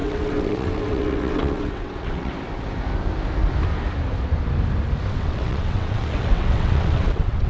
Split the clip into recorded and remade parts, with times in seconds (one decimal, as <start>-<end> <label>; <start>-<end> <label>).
0.0-2.3 remade; 2.3-5.1 recorded; 5.1-7.5 remade